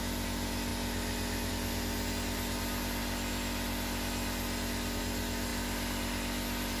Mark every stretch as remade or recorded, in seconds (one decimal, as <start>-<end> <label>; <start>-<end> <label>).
0.0-6.8 recorded